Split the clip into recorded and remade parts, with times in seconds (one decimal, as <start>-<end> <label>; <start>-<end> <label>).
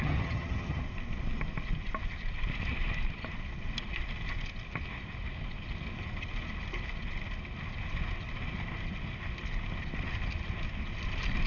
0.0-0.8 remade; 0.8-11.5 recorded